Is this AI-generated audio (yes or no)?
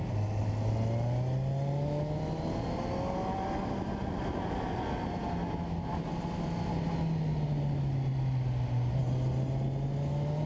no